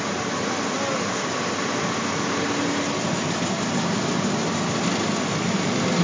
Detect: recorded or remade recorded